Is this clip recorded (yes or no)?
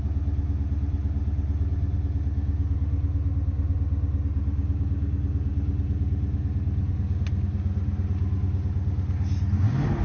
yes